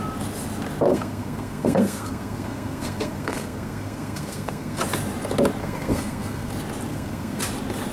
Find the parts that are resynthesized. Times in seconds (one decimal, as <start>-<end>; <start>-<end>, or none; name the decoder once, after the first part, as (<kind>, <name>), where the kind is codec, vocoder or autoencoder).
0.9-4.8 (codec, SNAC); 5.6-6.5; 6.9-7.4